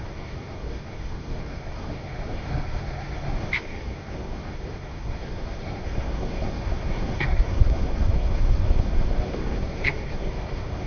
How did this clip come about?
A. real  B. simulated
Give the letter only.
B